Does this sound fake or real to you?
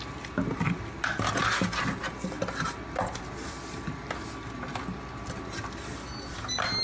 real